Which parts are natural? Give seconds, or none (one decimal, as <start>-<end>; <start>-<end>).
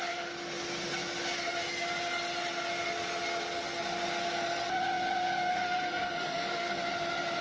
0.0-5.5; 6.8-7.4